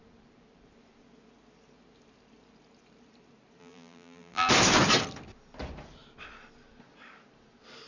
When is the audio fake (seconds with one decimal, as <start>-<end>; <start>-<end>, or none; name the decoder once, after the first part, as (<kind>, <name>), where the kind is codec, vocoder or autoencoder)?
3.6-4.5 (vocoder, BigVGAN v2)